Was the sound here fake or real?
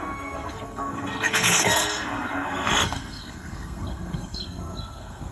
fake